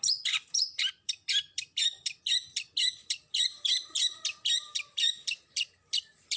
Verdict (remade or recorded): remade